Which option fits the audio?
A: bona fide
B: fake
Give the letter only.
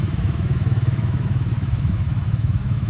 B